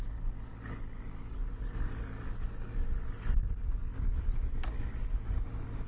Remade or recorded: recorded